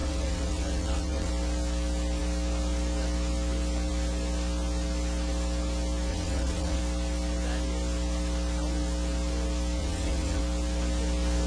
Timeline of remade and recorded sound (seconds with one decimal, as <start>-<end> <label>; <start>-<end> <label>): 0.0-1.3 remade; 1.3-6.1 recorded; 6.1-6.8 remade; 6.8-9.8 recorded; 9.8-10.4 remade; 10.4-11.5 recorded